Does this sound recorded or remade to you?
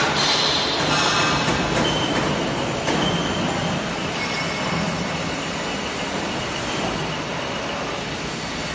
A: recorded